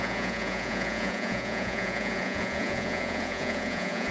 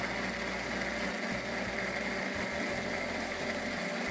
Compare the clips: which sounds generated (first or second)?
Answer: first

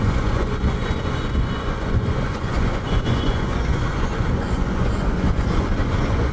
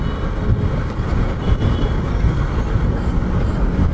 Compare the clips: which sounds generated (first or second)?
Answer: first